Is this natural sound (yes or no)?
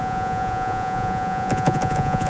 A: no